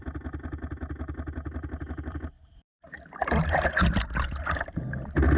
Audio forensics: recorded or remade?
recorded